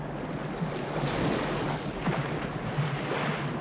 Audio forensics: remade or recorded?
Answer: recorded